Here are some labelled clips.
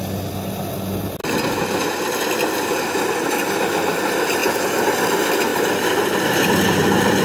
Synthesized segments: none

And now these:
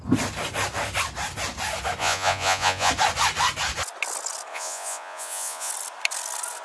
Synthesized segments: 2.0-2.9 (vocoder, Vocos); 4.5-5.7